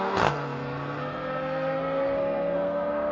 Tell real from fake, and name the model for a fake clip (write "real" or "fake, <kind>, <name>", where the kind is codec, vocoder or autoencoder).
fake, codec, SNAC